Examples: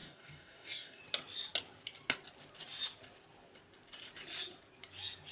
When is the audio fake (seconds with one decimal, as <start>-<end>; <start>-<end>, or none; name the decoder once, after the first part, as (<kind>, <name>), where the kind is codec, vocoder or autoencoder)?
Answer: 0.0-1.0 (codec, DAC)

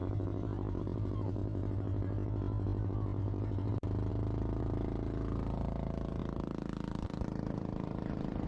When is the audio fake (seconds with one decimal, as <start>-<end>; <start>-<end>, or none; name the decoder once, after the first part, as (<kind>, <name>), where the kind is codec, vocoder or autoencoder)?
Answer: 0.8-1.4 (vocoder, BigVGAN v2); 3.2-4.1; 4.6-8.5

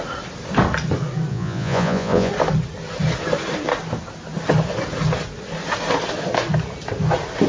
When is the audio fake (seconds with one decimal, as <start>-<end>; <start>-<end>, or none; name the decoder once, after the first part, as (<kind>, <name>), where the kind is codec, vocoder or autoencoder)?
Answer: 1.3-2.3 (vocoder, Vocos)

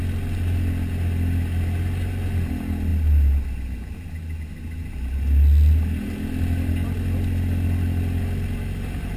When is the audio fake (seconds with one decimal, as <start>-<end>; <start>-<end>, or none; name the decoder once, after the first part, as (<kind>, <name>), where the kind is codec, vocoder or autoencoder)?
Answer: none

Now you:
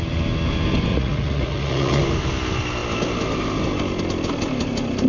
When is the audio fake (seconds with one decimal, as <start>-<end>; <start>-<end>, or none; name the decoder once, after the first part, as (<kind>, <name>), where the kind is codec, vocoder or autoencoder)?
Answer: 0.9-2.0 (vocoder, Vocos)